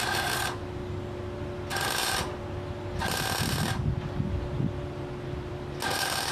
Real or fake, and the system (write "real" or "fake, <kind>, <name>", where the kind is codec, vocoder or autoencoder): real